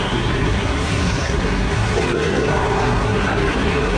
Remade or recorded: remade